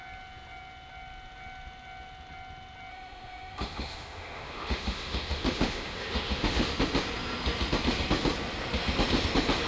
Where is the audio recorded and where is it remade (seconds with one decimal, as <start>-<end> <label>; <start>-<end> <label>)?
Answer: 0.0-2.9 recorded; 2.9-6.7 remade; 6.7-9.7 recorded